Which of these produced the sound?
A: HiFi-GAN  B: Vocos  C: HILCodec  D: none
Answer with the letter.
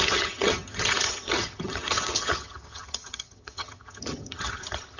A